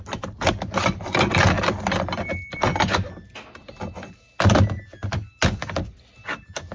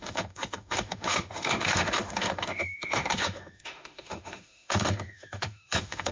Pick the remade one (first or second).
second